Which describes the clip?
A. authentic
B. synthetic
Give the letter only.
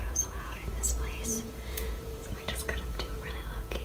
B